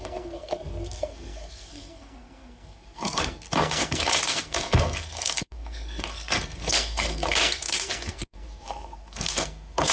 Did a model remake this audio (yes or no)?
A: yes